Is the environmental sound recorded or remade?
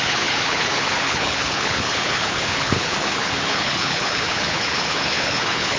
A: remade